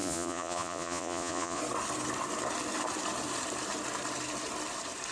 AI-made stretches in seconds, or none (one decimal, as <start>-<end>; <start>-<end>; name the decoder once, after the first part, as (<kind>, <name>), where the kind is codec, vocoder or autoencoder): 0.0-1.6 (vocoder, Vocos)

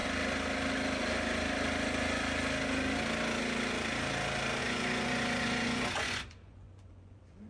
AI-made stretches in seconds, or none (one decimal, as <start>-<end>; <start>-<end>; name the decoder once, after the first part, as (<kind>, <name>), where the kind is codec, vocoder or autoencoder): 4.6-7.5 (vocoder, Vocos)

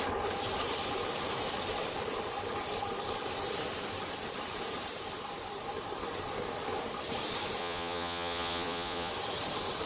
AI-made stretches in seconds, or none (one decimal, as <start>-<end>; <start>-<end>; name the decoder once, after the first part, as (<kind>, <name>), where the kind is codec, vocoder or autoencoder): 7.6-9.1 (vocoder, Vocos)

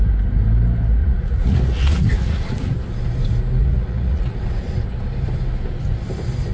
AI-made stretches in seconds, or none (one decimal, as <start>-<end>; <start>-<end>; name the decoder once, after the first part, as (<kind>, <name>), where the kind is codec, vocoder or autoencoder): 1.0-2.5 (vocoder, Vocos); 3.6-4.4

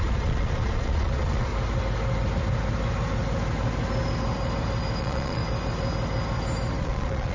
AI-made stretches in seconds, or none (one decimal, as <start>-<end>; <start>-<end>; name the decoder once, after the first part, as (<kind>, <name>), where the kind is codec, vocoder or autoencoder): 0.0-1.5 (vocoder, Vocos); 5.0-5.4; 6.8-7.3